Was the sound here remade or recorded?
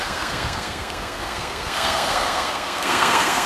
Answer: remade